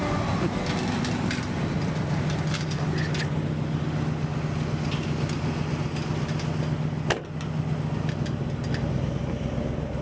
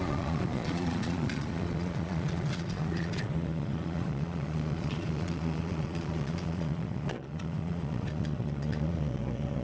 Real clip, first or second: first